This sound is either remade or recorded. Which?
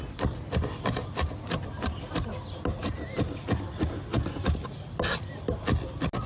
recorded